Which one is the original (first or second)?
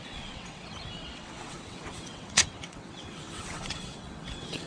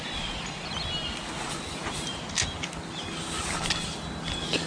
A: second